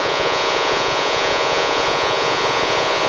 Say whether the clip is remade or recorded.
remade